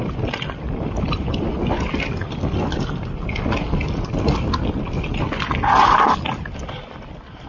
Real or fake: real